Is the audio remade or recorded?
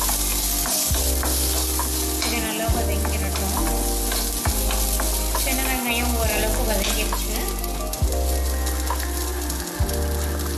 recorded